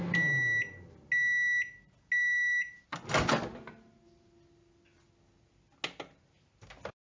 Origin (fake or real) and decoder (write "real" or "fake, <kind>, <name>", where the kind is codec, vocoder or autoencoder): real